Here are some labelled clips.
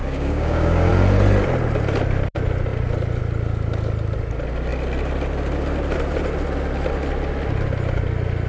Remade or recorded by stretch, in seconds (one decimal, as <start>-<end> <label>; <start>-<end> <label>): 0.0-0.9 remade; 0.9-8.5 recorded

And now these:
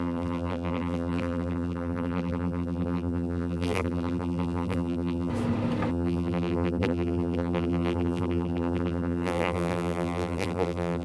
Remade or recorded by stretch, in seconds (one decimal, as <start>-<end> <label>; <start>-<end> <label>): 0.0-5.3 remade; 5.3-5.9 recorded; 5.9-11.0 remade

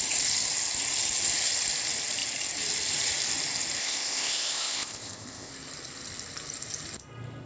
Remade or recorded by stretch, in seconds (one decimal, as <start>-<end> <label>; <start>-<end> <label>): 0.0-3.8 recorded; 3.8-5.5 remade; 5.5-7.5 recorded

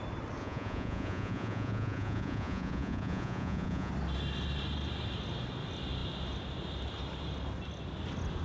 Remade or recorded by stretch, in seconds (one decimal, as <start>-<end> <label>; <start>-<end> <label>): 0.0-0.4 recorded; 0.4-3.9 remade; 3.9-8.4 recorded